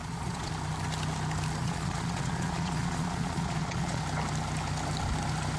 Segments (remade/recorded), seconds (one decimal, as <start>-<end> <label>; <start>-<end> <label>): 0.0-0.5 remade; 0.5-1.6 recorded; 1.6-4.0 remade; 4.0-5.6 recorded